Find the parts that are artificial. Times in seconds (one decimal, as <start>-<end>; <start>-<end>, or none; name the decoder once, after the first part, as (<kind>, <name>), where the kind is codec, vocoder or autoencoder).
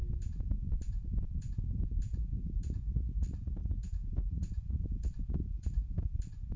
2.1-6.1 (vocoder, Vocos)